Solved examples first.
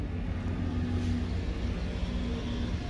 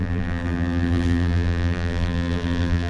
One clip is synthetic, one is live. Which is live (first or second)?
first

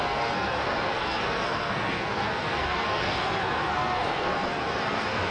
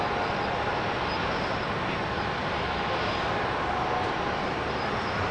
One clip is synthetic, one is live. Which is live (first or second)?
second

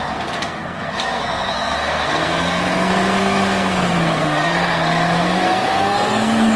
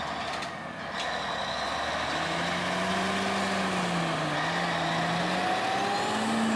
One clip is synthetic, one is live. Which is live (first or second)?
second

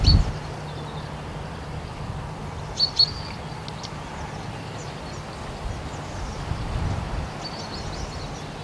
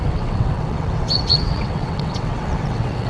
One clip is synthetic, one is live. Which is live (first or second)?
first